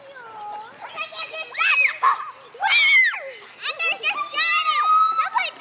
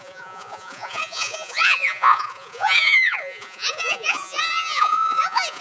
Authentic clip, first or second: first